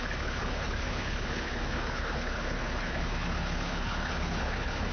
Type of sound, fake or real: fake